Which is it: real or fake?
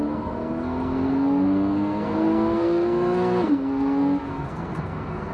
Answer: fake